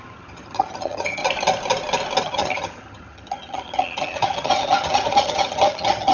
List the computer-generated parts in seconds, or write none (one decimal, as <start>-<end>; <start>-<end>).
0.0-1.2; 2.2-6.1